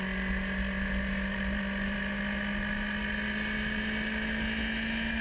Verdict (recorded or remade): recorded